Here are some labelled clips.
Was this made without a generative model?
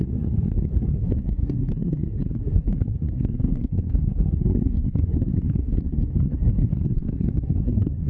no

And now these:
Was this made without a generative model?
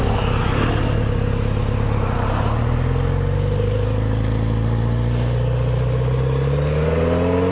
yes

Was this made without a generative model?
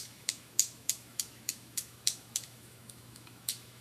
no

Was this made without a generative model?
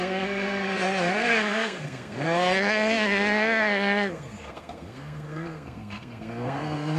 no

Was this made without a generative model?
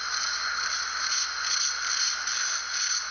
yes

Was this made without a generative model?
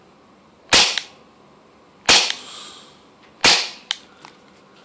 yes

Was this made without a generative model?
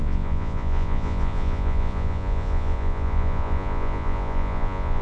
no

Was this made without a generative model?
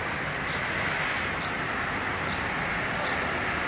yes